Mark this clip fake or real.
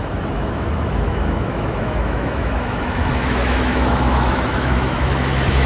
fake